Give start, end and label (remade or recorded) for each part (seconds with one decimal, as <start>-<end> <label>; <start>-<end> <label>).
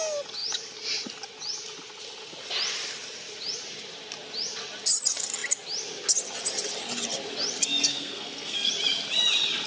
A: 0.0-7.9 recorded; 7.9-8.7 remade; 8.7-9.7 recorded